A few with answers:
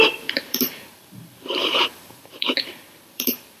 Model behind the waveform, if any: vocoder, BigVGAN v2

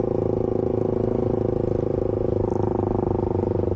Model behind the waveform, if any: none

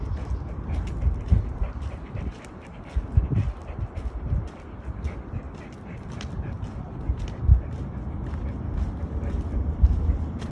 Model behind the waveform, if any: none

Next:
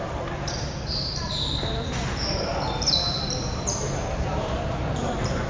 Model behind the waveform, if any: vocoder, BigVGAN v2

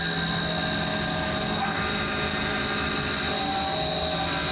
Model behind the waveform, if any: none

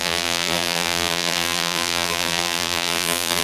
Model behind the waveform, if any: vocoder, BigVGAN v2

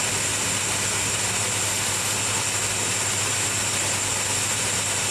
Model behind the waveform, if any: none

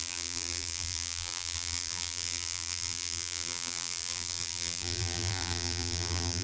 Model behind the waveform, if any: vocoder, BigVGAN v2